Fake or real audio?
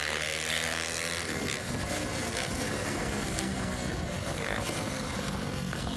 fake